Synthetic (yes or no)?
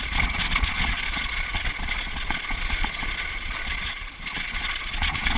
yes